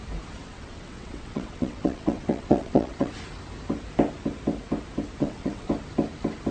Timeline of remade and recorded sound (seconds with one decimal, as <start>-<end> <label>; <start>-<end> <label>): 0.0-0.4 recorded; 0.4-3.1 remade; 3.1-5.2 recorded; 5.2-5.7 remade; 5.7-6.5 recorded